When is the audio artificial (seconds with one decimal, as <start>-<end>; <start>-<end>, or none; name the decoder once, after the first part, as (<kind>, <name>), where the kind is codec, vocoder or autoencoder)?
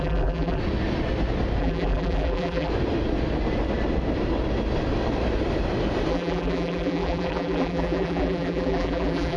0.0-0.6 (vocoder, BigVGAN v2); 1.6-2.7; 6.1-9.4